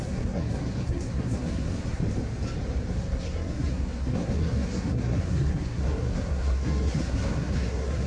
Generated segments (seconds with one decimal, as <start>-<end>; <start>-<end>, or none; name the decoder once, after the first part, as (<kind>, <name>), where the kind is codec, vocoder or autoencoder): 0.0-2.0 (codec, SNAC); 2.9-8.1